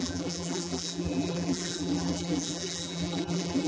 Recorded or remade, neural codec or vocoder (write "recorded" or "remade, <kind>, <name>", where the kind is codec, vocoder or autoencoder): remade, vocoder, BigVGAN v2